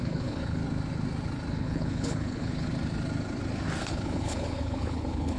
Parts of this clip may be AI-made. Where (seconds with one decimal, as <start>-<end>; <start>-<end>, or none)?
0.0-0.6; 1.5-2.7; 3.8-5.4